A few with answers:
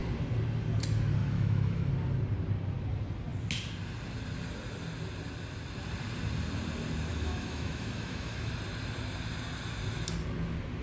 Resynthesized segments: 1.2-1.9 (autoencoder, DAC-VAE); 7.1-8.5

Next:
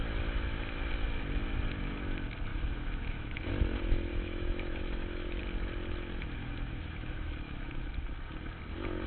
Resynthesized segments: 2.5-3.5 (autoencoder, DAC-VAE); 4.1-5.4; 6.4-7.9